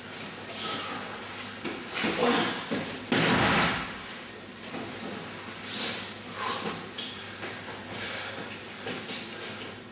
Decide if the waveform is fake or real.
real